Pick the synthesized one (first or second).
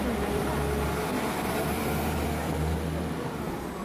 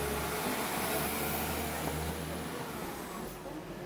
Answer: first